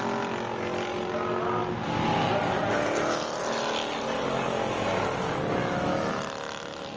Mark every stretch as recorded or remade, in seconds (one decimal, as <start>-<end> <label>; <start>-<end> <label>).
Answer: 0.0-5.6 recorded; 5.6-6.1 remade; 6.1-7.0 recorded